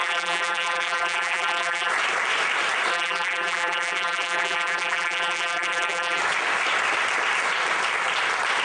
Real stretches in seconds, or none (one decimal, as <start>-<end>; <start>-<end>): 1.9-2.9; 6.2-8.6